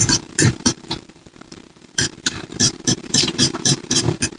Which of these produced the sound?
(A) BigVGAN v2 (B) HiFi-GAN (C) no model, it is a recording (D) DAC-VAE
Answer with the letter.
A